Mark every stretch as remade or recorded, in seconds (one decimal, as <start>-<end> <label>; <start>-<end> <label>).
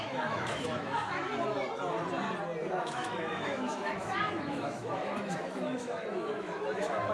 0.0-1.3 remade; 1.3-2.8 recorded; 2.8-7.1 remade